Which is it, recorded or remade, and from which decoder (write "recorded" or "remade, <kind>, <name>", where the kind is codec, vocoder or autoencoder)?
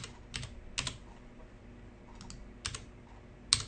recorded